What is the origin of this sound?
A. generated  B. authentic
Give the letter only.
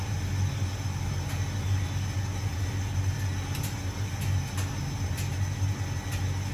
B